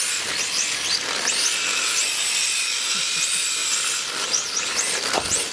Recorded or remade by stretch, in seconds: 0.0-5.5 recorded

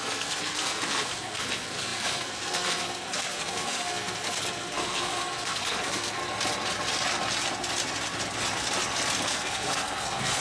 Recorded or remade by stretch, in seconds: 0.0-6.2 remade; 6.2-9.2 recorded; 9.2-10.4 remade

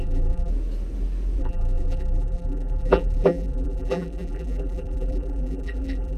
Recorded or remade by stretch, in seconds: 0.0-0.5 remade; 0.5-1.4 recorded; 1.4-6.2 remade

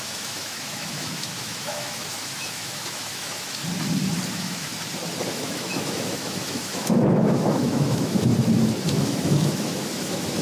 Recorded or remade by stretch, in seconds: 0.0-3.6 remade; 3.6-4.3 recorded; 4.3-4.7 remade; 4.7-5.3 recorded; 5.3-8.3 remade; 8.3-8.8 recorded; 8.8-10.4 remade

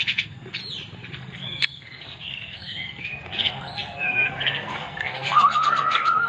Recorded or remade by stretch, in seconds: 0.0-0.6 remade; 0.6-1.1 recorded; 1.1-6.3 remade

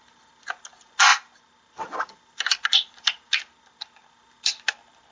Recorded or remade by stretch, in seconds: 0.0-5.1 recorded

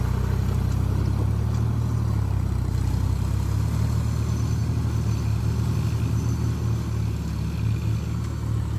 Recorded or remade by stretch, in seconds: 0.0-8.8 recorded

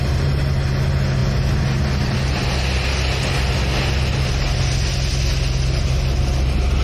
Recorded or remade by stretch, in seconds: 0.0-6.8 recorded